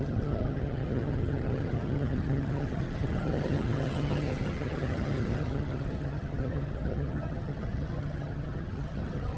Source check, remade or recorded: remade